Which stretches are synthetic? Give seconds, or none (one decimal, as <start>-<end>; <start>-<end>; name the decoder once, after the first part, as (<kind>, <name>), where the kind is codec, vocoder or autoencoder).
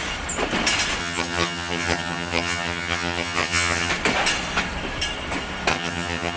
1.0-3.9 (vocoder, HiFi-GAN); 5.7-6.4